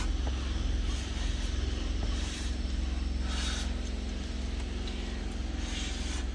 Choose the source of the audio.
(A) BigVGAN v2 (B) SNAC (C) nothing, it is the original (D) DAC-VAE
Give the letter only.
C